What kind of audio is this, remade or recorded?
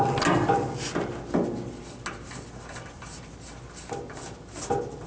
recorded